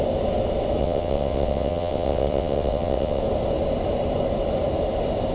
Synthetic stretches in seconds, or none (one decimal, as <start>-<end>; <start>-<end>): 0.8-3.2